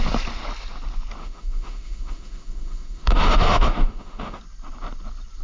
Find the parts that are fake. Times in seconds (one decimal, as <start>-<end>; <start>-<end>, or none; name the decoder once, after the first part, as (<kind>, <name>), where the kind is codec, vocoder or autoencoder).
1.2-4.4 (autoencoder, DAC-VAE)